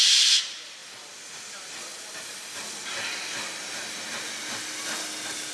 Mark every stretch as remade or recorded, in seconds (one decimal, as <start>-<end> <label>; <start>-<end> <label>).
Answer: 0.0-0.8 remade; 0.8-1.5 recorded; 1.5-1.9 remade; 1.9-5.5 recorded